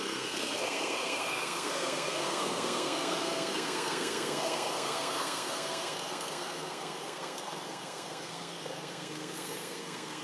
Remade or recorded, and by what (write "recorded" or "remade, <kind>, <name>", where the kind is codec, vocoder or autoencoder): remade, codec, SNAC